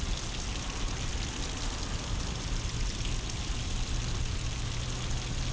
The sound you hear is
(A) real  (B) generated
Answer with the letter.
A